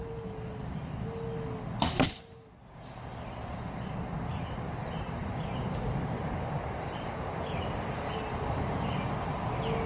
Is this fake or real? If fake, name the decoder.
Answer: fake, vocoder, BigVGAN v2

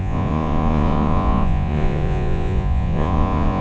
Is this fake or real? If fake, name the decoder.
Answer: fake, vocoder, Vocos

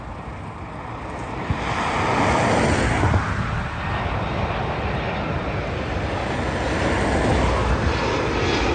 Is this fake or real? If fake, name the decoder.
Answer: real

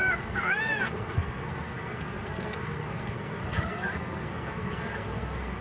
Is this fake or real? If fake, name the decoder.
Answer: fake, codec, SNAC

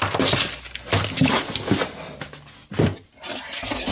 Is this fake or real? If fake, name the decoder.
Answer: real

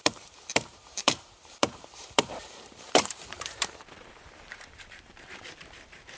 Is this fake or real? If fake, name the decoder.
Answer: fake, vocoder, BigVGAN v2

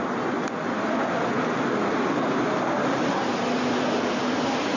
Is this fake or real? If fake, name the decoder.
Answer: real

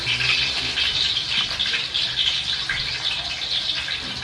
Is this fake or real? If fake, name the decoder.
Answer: real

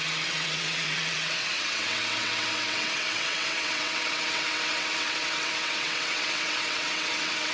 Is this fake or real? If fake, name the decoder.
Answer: fake, vocoder, WaveNeXt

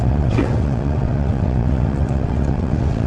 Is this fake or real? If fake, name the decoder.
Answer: fake, vocoder, WaveNeXt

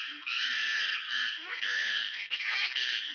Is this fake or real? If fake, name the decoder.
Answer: fake, codec, SNAC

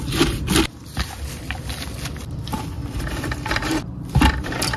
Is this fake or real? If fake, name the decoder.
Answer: fake, vocoder, BigVGAN v2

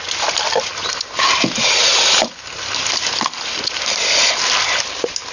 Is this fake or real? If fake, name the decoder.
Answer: real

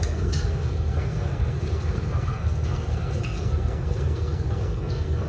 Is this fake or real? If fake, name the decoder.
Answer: fake, codec, SNAC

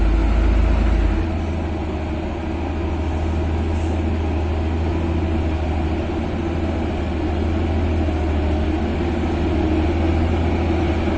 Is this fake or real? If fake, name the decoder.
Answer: real